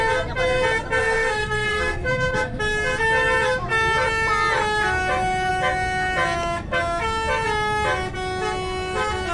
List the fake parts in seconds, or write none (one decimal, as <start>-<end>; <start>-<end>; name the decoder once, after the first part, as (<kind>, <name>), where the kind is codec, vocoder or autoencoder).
1.0-2.6 (codec, SNAC)